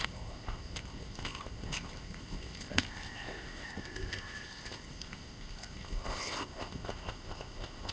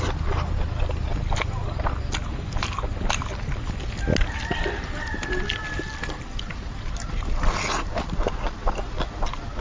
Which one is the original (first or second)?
second